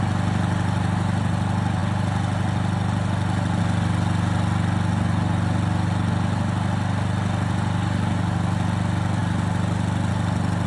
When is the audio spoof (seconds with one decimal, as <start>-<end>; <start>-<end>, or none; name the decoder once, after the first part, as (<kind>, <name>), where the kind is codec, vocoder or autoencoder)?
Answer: none